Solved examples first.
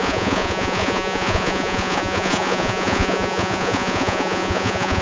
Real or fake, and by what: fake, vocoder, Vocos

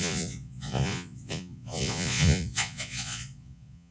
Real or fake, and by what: fake, vocoder, Vocos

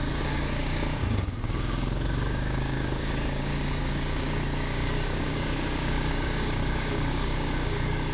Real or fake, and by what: fake, codec, DAC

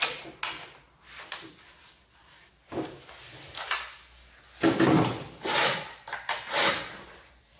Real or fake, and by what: real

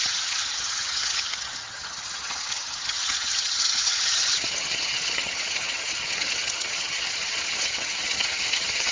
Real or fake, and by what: fake, vocoder, HiFi-GAN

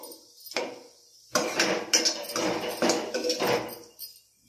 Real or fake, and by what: real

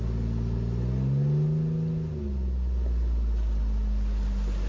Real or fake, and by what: real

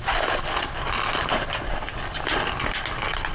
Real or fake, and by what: real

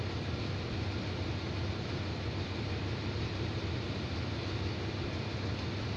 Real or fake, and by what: fake, vocoder, BigVGAN v2